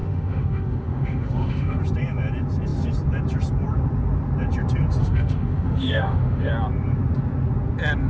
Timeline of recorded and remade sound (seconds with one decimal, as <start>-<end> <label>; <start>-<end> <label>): 0.0-1.8 remade; 1.8-5.0 recorded; 5.0-6.5 remade; 6.5-8.1 recorded

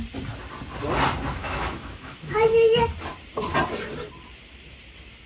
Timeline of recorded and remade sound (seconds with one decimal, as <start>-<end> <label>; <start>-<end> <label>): 0.0-1.4 recorded; 1.4-2.9 remade; 2.9-5.3 recorded

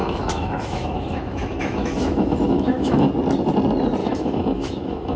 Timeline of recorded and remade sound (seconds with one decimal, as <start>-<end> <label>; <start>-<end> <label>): 0.0-3.1 remade; 3.1-4.0 recorded; 4.0-5.2 remade

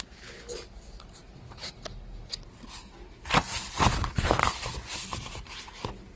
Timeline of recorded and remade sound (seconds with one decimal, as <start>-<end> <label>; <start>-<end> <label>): 0.0-6.2 recorded

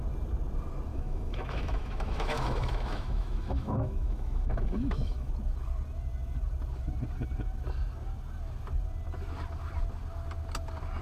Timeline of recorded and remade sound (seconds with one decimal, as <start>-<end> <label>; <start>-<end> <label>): 0.0-0.9 recorded; 0.9-5.3 remade; 5.3-11.0 recorded